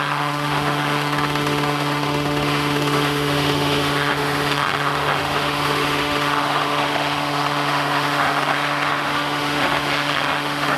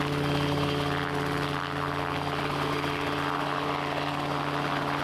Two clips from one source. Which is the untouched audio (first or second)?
second